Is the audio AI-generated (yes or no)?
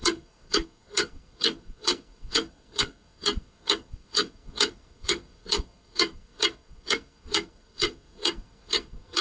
yes